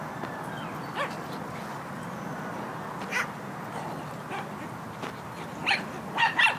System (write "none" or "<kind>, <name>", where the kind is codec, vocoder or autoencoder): none